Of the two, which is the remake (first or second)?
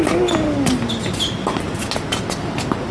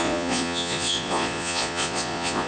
second